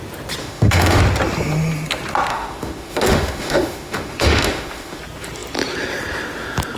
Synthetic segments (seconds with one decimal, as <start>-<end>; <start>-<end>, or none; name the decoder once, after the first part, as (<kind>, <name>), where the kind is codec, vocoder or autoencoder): 0.4-1.0 (autoencoder, DAC-VAE); 2.3-5.0